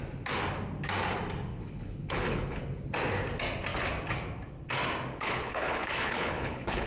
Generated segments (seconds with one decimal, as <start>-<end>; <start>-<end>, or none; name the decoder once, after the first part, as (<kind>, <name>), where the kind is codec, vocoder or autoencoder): 1.5-2.6 (codec, HILCodec); 5.1-6.9